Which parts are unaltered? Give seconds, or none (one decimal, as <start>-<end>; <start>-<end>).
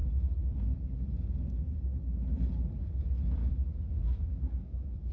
0.0-3.4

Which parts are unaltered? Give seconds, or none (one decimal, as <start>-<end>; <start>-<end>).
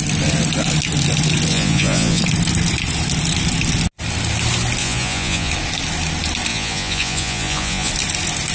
0.0-1.5; 2.2-4.8; 5.5-6.5; 7.9-8.5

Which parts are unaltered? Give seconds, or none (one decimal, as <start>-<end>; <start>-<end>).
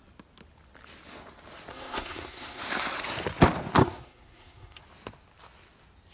0.0-1.7; 2.6-3.8; 4.8-6.1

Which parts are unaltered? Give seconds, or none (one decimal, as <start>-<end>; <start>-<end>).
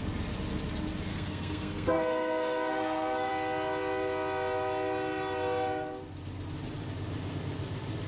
0.0-1.1; 3.3-8.1